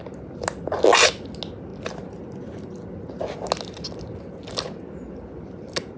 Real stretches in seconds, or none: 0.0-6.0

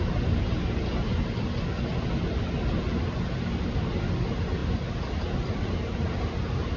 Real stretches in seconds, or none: 0.0-6.8

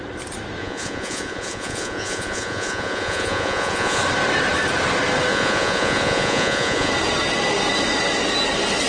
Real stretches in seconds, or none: 0.0-0.6; 4.0-5.3; 6.9-8.9